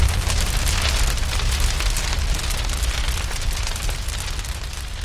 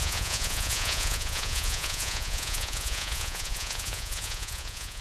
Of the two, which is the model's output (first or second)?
second